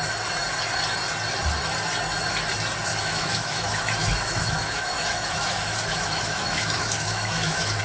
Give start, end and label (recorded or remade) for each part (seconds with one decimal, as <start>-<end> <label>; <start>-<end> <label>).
0.0-2.9 recorded; 2.9-7.8 remade